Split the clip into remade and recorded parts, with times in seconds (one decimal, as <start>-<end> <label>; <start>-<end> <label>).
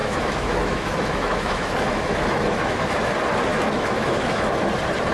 0.0-3.1 remade; 3.1-3.5 recorded; 3.5-4.5 remade; 4.5-5.1 recorded